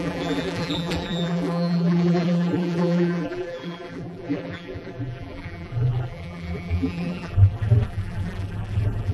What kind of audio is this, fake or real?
fake